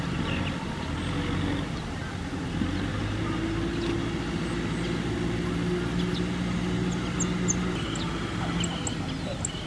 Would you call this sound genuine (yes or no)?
yes